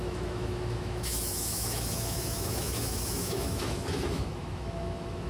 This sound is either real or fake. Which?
fake